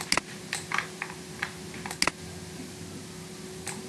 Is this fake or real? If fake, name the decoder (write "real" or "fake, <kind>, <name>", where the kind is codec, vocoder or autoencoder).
real